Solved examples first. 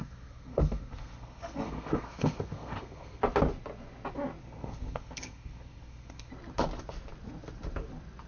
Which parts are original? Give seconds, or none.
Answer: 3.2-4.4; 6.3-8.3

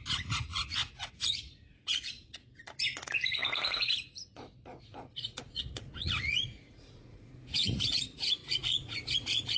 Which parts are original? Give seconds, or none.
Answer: none

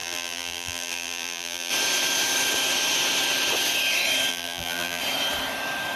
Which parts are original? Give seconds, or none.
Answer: 1.7-4.3; 5.0-6.0

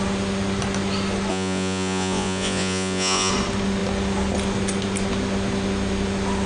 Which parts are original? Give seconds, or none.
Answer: 0.0-1.3; 3.3-6.5